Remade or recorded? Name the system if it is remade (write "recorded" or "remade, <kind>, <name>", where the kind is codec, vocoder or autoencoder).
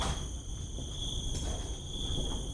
recorded